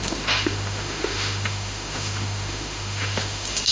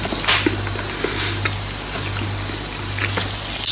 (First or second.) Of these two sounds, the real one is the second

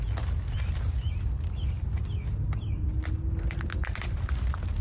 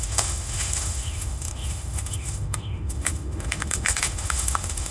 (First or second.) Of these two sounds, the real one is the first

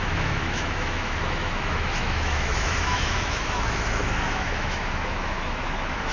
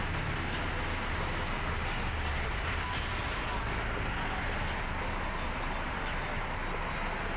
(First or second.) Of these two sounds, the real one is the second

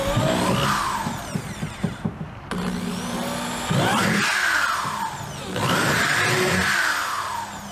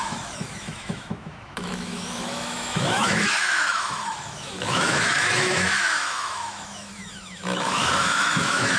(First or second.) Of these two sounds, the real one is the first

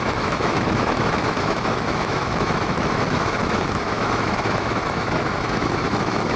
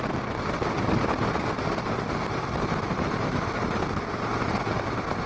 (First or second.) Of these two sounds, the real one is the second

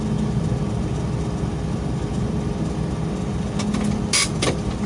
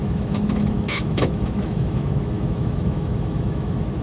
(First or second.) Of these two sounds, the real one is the first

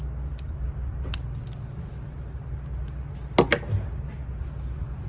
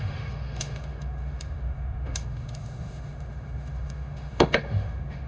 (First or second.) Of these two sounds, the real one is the first